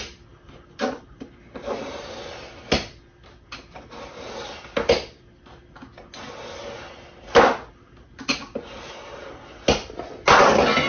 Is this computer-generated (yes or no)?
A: no